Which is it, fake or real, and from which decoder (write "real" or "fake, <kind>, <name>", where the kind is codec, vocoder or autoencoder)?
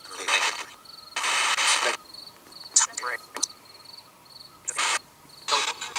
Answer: real